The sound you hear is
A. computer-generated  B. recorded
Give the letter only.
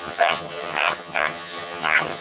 A